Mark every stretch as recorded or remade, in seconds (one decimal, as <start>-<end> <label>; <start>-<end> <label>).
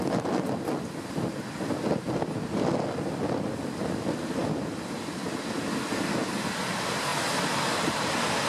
0.0-8.5 recorded